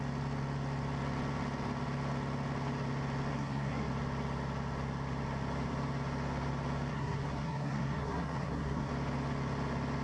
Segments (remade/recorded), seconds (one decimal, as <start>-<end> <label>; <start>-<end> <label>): 0.0-3.3 recorded; 3.3-3.9 remade; 3.9-6.9 recorded; 6.9-8.9 remade; 8.9-10.0 recorded